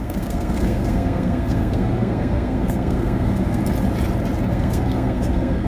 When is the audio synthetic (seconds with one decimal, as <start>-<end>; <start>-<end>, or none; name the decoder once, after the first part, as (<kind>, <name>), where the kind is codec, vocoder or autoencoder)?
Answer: 0.0-3.6 (codec, SNAC); 4.5-5.7